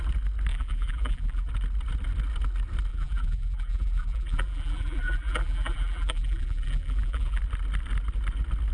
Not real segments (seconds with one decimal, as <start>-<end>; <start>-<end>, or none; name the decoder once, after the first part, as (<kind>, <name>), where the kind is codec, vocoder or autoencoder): 0.5-1.5 (vocoder, BigVGAN v2); 2.9-7.4